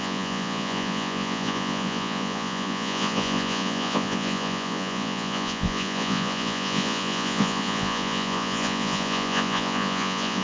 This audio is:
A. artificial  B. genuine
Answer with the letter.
A